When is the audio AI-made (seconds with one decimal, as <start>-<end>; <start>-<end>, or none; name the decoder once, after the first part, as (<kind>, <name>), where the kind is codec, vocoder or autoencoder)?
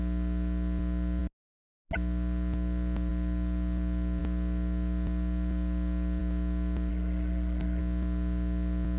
6.9-7.8 (codec, SNAC)